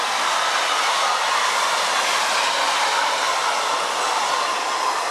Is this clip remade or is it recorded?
recorded